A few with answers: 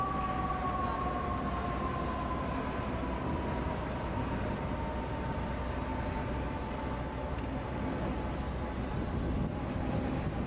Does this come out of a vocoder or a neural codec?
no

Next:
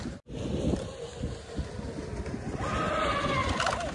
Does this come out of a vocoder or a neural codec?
no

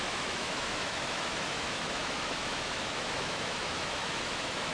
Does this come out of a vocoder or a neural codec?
yes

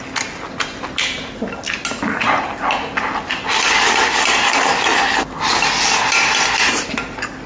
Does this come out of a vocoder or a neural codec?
no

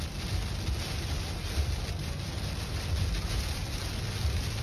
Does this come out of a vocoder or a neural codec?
no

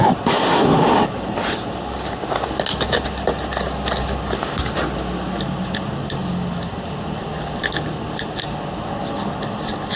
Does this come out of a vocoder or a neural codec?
no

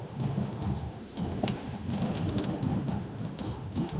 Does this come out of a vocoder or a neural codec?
yes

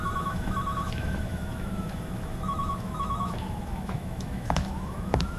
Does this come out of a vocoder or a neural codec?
yes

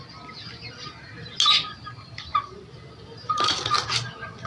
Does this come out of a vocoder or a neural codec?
no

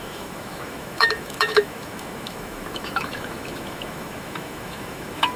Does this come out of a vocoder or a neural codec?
yes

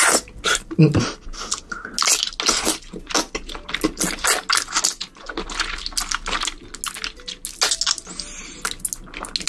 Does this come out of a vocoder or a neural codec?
no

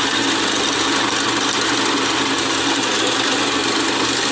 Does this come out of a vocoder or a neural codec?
no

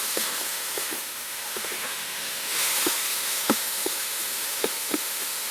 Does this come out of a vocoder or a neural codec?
yes